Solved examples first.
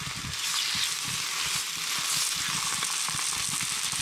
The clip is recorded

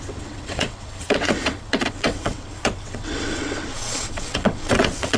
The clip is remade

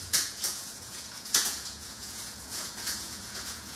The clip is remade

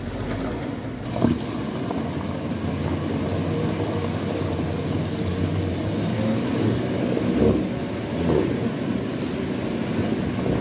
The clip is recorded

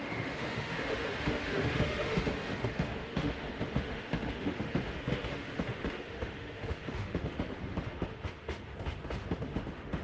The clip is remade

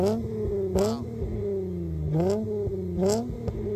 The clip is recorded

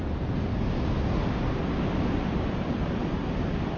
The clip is recorded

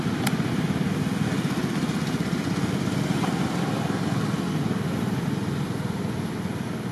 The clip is recorded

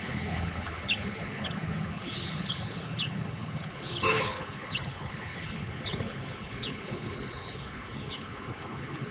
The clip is remade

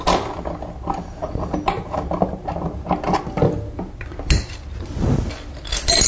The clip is recorded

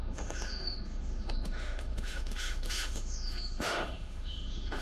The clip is remade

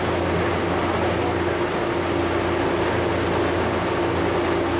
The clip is recorded